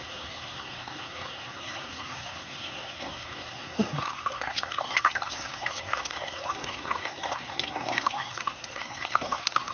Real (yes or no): no